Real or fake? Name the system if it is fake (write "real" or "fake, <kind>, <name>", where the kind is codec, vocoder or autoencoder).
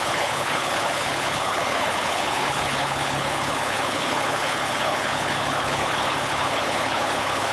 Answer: fake, codec, HILCodec